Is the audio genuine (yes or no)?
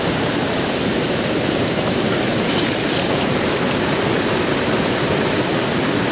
no